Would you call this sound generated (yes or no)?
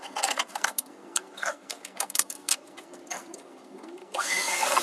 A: yes